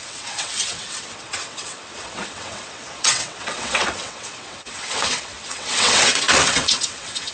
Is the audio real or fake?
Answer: fake